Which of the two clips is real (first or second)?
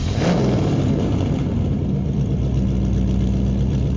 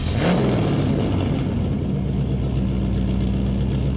second